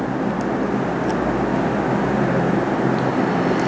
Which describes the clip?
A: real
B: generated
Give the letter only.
A